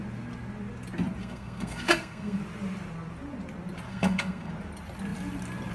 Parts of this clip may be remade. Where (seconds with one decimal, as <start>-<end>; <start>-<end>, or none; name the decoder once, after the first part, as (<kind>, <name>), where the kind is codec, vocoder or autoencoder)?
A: 1.2-2.4 (codec, SNAC); 3.9-4.5